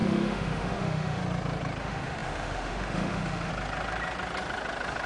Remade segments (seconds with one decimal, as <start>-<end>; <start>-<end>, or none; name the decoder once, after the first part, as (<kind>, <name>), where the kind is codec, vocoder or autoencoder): 0.0-1.2 (autoencoder, DAC-VAE); 1.8-3.5

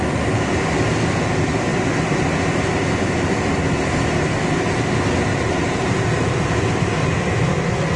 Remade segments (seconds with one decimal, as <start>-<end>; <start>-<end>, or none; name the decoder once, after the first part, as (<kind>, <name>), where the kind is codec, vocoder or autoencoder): 5.3-6.9 (vocoder, BigVGAN v2)

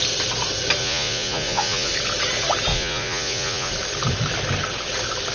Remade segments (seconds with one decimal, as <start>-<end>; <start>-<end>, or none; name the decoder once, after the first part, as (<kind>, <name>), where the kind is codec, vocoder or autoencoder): 0.8-1.9 (vocoder, Vocos); 2.7-3.7

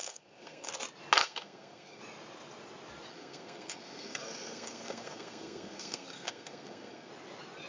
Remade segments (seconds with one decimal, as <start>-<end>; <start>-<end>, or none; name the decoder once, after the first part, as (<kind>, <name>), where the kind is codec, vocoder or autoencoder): 0.0-0.7 (codec, SNAC); 1.2-2.0; 3.1-7.1

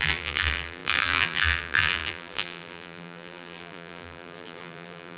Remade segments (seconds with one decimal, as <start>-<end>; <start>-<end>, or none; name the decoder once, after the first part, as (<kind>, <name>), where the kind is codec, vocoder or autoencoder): 0.0-5.2 (vocoder, BigVGAN v2)

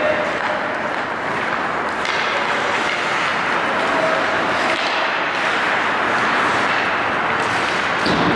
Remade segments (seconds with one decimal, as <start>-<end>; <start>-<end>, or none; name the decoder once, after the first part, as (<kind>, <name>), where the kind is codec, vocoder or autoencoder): none